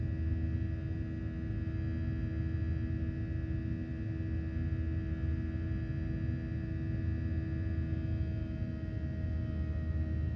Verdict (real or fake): real